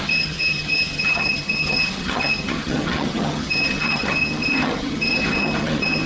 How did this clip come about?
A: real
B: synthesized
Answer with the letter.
B